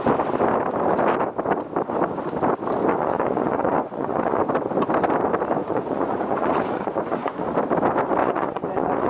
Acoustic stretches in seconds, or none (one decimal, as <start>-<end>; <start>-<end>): 0.0-2.9; 4.5-5.6; 7.5-8.2